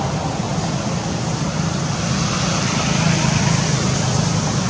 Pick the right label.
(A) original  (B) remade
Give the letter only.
A